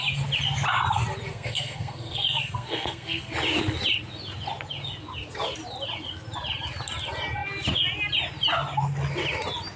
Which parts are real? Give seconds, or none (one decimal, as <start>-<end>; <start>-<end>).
0.0-1.3; 3.3-9.8